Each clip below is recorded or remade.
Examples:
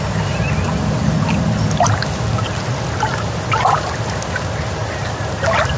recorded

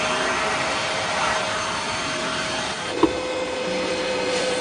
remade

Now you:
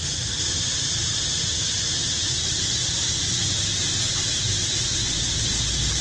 recorded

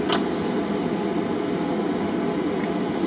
recorded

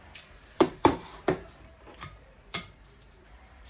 remade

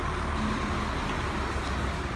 recorded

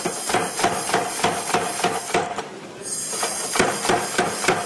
recorded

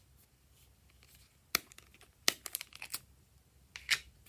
recorded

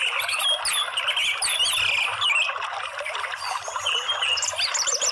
remade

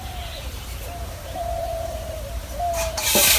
remade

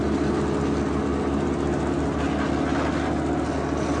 recorded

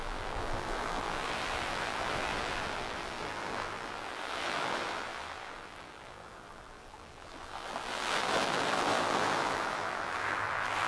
remade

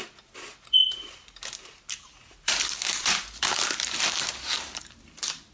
remade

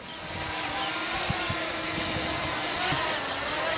recorded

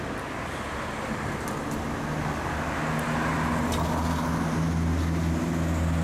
recorded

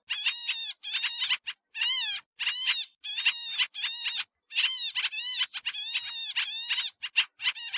recorded